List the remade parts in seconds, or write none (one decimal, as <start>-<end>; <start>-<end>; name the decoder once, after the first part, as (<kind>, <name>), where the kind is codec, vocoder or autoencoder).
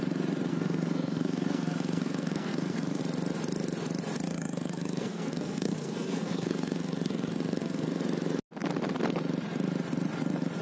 0.5-3.0 (codec, SNAC); 4.3-8.0